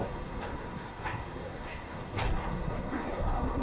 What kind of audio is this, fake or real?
fake